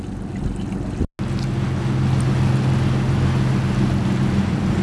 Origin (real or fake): real